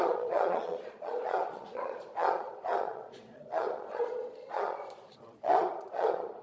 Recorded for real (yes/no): no